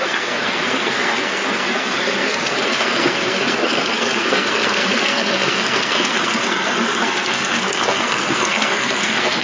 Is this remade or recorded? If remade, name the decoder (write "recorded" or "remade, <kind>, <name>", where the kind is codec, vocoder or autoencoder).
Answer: remade, codec, SNAC